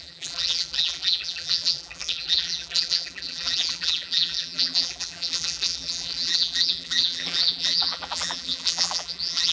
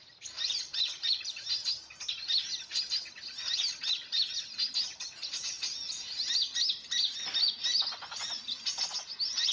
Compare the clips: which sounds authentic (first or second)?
second